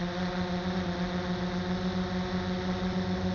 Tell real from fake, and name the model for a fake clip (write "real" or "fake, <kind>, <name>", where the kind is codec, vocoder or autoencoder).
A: real